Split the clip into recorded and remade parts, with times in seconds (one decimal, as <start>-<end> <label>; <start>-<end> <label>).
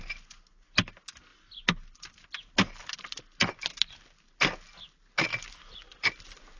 0.0-6.6 recorded